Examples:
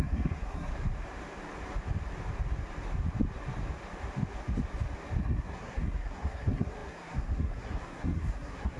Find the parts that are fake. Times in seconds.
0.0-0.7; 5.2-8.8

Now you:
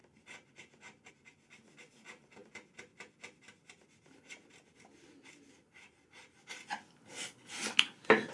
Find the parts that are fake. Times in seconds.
none

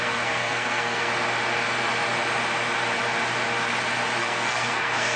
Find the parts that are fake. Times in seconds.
0.0-1.1; 4.2-5.2

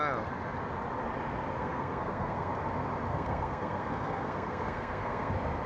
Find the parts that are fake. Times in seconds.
1.5-2.5; 3.1-5.3

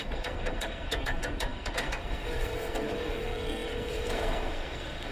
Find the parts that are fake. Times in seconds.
0.0-5.1

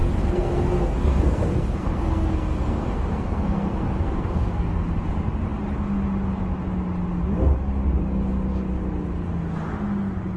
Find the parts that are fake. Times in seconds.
0.0-4.9

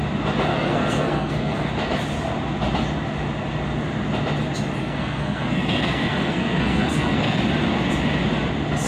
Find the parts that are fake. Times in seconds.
0.5-1.7; 4.8-7.4

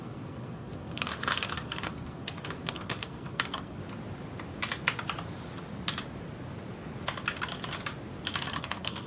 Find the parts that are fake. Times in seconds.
0.0-3.8; 8.6-9.1